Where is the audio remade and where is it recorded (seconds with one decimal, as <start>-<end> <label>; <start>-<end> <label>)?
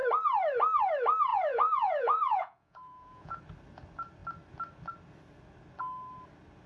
0.0-1.3 recorded; 1.3-3.4 remade; 3.4-6.7 recorded